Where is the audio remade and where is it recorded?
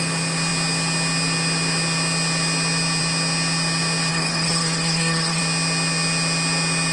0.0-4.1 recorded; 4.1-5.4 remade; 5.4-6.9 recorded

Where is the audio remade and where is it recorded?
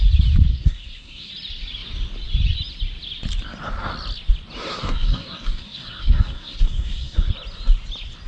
0.0-0.5 recorded; 0.5-1.3 remade; 1.3-4.7 recorded; 4.7-7.3 remade; 7.3-8.3 recorded